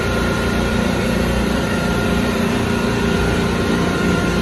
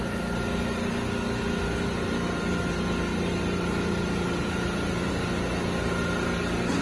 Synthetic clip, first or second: first